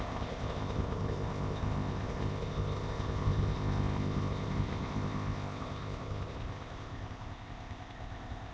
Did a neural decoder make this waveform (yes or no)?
yes